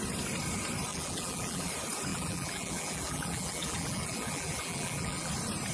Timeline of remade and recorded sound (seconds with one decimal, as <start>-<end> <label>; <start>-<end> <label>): 0.0-0.9 recorded; 0.9-1.7 remade; 1.7-2.1 recorded; 2.1-5.3 remade; 5.3-5.7 recorded